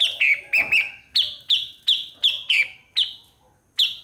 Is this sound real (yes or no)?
yes